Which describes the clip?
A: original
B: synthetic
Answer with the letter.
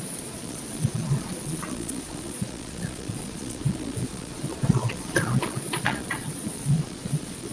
B